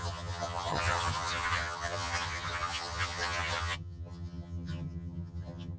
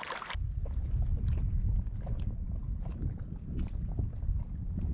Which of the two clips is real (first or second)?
second